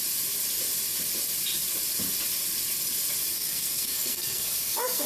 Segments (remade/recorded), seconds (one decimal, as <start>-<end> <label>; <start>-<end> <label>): 0.0-3.3 recorded; 3.3-5.1 remade